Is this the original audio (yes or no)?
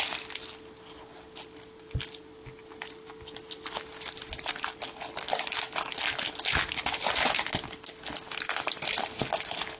yes